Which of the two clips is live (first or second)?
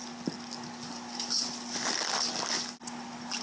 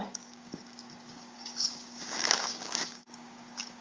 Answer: first